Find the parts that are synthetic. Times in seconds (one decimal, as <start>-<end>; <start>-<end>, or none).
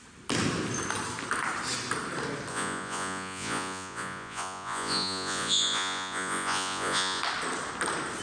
2.5-7.2